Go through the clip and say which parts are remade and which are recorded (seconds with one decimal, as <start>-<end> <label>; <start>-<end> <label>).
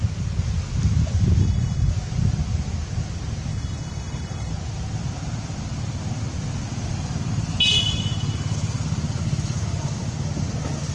0.0-1.4 recorded; 1.4-1.9 remade; 1.9-3.5 recorded; 3.5-4.5 remade; 4.5-10.9 recorded